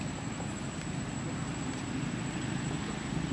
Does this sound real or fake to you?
real